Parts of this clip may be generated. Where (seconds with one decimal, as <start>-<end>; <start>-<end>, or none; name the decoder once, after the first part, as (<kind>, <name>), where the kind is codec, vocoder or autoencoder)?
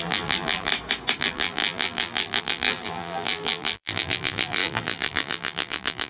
0.0-0.7 (vocoder, BigVGAN v2); 1.2-6.1